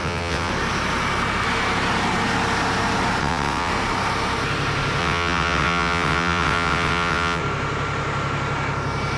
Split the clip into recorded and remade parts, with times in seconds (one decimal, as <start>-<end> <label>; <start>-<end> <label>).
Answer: 0.0-0.5 remade; 0.5-3.2 recorded; 3.2-3.7 remade; 3.7-5.0 recorded; 5.0-7.4 remade; 7.4-9.2 recorded